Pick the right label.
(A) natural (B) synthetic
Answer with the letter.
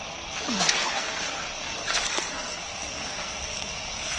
B